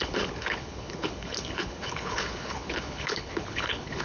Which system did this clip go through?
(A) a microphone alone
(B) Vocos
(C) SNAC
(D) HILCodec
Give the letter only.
D